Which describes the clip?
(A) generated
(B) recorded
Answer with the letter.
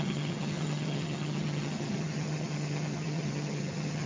A